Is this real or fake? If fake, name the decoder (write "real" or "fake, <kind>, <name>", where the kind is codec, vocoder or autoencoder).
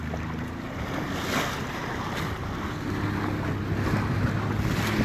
real